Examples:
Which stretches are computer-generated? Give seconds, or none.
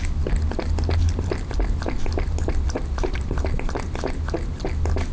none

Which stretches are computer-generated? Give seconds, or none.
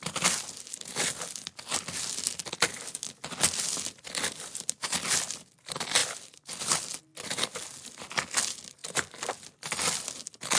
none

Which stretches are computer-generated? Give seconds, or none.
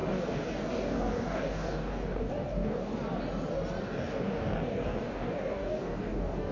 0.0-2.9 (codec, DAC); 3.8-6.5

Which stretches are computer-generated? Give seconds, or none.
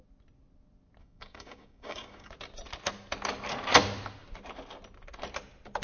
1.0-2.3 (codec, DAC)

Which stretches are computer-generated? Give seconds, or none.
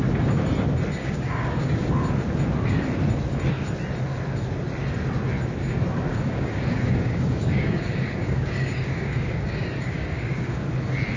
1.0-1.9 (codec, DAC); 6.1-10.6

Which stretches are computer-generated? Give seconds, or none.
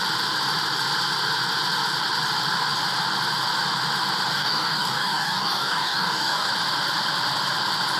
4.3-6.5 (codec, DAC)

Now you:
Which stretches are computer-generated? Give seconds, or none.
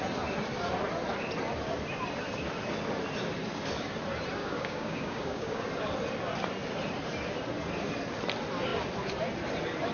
4.4-5.6 (codec, DAC)